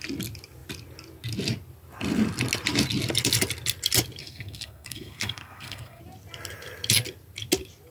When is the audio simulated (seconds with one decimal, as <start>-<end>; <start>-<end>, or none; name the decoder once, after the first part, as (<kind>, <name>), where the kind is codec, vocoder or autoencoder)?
4.2-6.0 (codec, SNAC)